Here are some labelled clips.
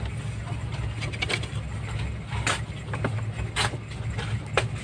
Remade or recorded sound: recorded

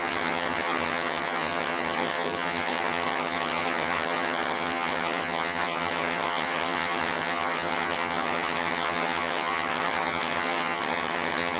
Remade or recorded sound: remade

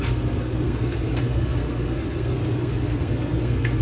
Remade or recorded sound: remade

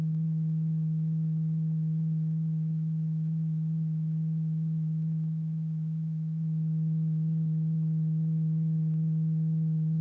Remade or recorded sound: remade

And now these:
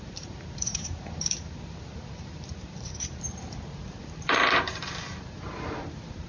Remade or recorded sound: remade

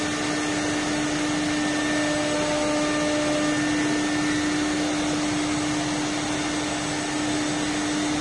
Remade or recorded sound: recorded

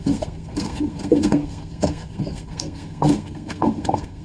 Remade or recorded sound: remade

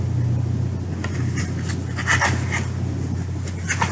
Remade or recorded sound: recorded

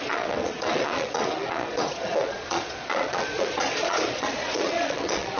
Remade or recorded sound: remade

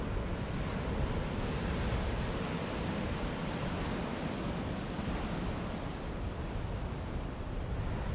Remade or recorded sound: recorded